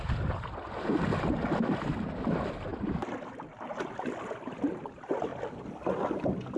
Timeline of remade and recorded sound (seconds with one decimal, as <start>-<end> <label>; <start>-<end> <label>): 0.0-6.6 recorded